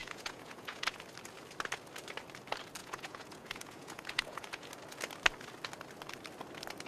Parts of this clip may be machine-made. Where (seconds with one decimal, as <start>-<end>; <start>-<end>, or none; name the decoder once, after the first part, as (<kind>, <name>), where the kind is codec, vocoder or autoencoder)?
0.0-1.0 (vocoder, Vocos); 2.8-4.7